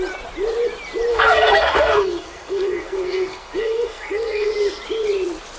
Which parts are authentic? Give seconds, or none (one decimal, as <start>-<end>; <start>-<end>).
0.0-1.1; 4.5-5.6